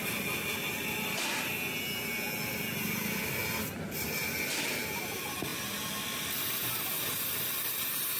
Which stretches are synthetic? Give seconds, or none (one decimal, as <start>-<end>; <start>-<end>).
none